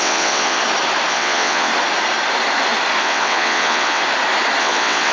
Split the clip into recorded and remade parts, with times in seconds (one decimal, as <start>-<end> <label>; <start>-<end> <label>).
0.0-0.6 remade; 0.6-1.1 recorded; 1.1-1.7 remade; 1.7-3.0 recorded; 3.0-4.0 remade; 4.0-4.6 recorded; 4.6-5.1 remade